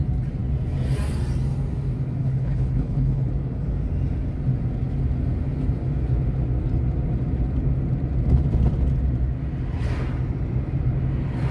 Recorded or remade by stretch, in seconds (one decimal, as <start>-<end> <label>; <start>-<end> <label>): 0.0-2.2 recorded; 2.2-3.3 remade; 3.3-11.5 recorded